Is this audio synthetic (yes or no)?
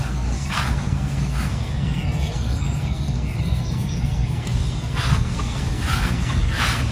yes